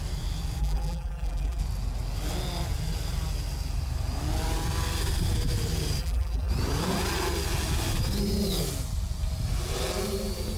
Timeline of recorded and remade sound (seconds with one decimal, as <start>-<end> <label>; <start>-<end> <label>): 0.0-0.6 recorded; 0.6-1.6 remade; 1.6-6.0 recorded; 6.0-6.5 remade; 6.5-10.6 recorded